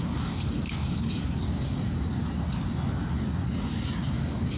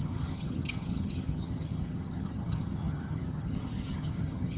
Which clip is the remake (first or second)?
second